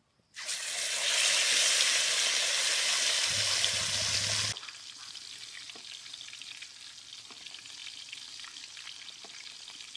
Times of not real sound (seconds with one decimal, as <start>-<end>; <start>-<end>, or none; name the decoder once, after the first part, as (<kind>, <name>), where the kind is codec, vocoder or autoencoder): none